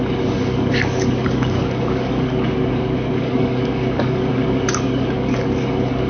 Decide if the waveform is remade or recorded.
remade